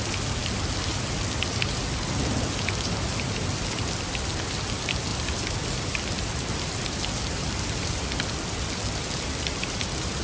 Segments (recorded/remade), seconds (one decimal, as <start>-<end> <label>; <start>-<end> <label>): 0.0-10.2 recorded